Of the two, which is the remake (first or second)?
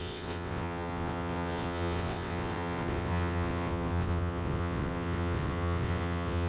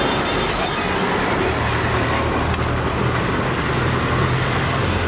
first